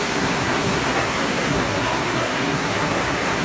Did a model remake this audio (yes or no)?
yes